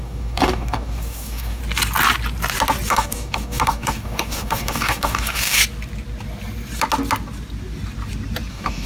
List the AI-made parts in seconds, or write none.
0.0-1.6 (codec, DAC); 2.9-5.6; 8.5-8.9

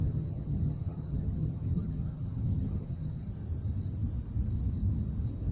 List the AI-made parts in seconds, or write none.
0.0-3.3 (vocoder, HiFi-GAN)

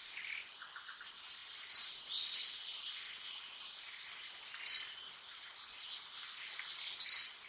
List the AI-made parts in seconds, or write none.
none